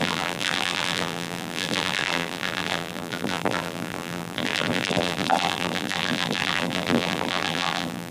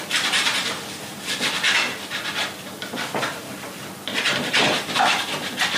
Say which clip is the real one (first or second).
second